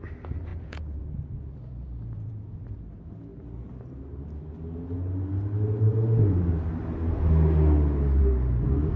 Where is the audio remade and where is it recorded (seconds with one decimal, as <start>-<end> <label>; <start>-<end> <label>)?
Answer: 0.0-0.5 recorded; 0.5-2.5 remade; 2.5-9.0 recorded